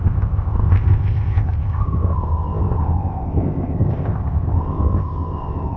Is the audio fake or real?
fake